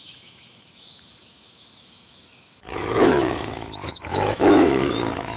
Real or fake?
fake